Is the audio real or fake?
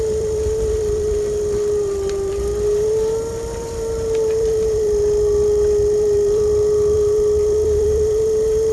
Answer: fake